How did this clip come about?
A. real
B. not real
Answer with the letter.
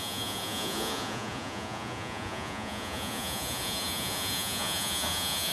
B